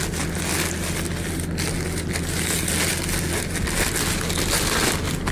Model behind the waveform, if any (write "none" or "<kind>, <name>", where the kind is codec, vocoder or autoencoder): none